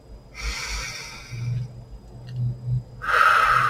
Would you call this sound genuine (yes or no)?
yes